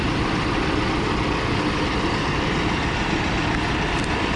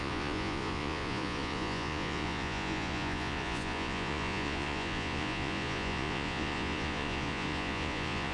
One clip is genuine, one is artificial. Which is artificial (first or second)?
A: second